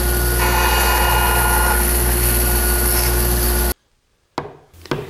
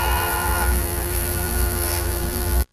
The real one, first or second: first